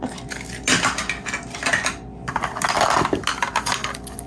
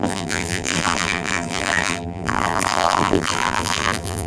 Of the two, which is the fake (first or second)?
second